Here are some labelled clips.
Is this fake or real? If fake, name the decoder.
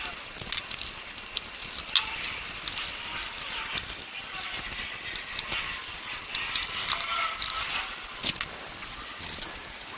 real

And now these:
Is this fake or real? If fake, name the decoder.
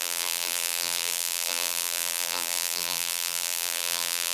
fake, vocoder, BigVGAN v2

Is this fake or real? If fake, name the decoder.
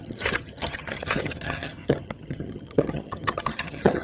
fake, vocoder, HiFi-GAN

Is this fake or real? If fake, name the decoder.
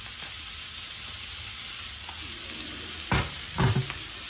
real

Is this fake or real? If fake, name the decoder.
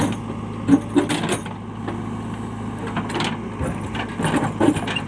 real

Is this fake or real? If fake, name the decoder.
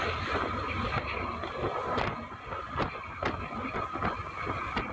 real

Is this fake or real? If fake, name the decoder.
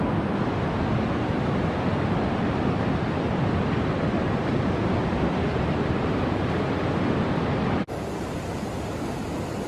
real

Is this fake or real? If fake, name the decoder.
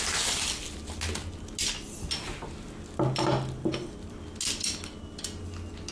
real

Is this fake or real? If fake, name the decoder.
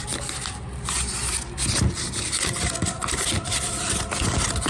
real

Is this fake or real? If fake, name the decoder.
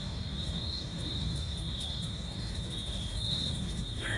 fake, codec, DAC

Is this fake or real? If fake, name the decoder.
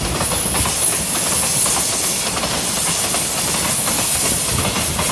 real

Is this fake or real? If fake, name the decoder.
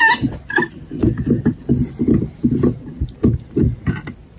real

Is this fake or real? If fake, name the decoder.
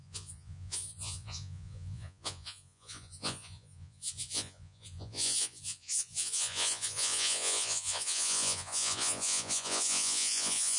fake, vocoder, Vocos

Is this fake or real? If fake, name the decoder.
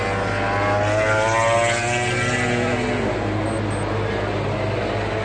real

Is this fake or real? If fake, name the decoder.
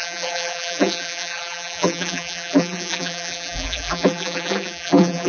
fake, vocoder, BigVGAN v2